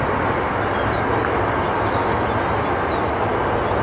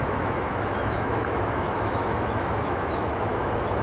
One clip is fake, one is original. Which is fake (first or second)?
second